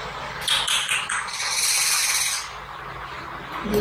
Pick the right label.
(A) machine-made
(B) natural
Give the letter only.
B